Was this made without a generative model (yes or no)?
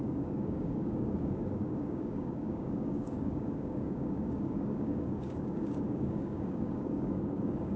no